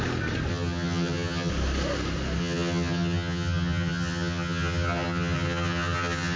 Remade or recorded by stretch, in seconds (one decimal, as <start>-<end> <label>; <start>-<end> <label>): 0.0-0.5 recorded; 0.5-1.5 remade; 1.5-2.4 recorded; 2.4-6.4 remade